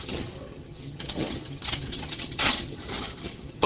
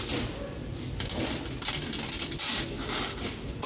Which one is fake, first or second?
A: first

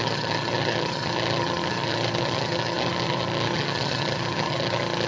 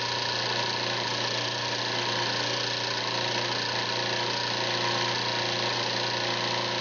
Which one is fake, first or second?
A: first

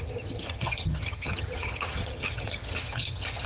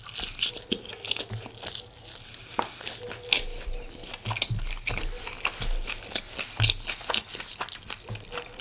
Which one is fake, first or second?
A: first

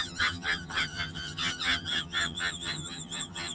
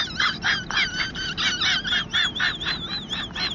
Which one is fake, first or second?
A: first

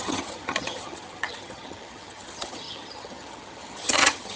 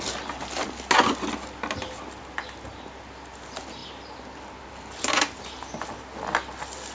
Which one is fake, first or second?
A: first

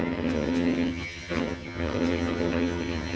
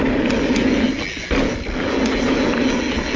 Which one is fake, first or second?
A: first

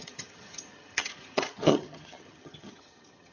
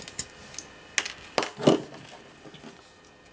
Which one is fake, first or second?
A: first